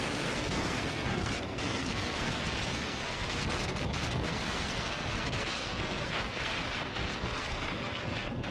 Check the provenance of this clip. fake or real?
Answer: fake